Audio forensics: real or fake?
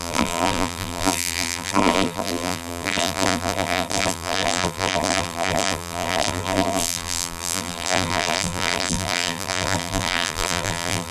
fake